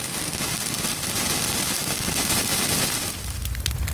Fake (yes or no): no